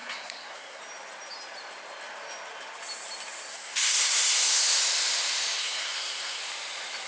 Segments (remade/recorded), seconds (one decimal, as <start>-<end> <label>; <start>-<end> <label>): 0.0-0.8 remade; 0.8-3.5 recorded; 3.5-4.8 remade; 4.8-5.6 recorded; 5.6-6.4 remade; 6.4-7.1 recorded